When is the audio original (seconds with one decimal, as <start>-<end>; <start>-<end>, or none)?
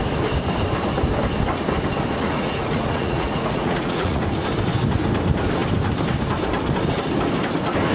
0.0-2.1; 4.2-7.9